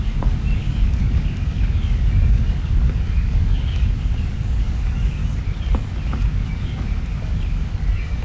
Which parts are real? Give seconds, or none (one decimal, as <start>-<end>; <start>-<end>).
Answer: 5.2-6.1